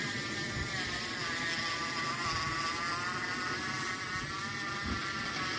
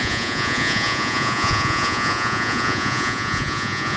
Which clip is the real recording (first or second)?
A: first